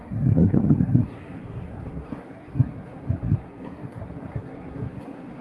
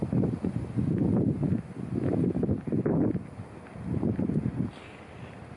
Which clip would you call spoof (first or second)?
first